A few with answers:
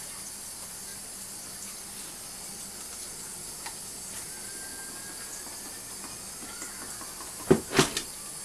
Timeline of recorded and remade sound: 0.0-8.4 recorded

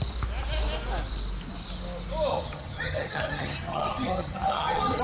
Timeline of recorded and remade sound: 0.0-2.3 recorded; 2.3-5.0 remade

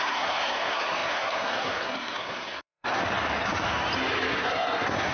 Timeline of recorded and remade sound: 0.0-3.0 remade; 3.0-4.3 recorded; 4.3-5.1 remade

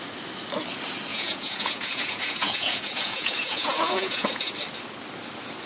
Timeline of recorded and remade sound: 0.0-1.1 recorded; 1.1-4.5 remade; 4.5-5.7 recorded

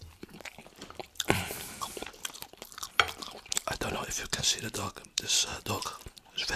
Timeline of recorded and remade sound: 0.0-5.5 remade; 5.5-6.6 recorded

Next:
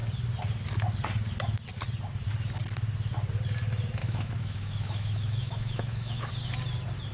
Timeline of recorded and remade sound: 0.0-4.0 recorded; 4.0-6.3 remade; 6.3-7.1 recorded